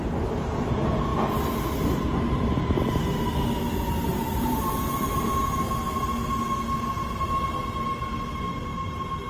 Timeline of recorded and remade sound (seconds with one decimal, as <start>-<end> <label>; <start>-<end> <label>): 0.0-4.1 recorded; 4.1-5.4 remade; 5.4-9.3 recorded